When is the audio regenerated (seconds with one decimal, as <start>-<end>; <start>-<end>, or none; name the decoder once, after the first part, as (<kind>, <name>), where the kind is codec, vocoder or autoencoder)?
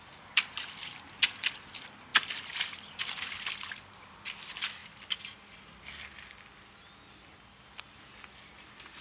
none